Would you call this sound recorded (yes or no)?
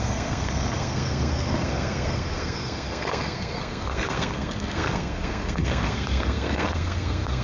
no